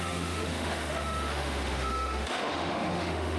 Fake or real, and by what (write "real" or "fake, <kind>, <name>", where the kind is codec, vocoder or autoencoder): fake, autoencoder, DAC-VAE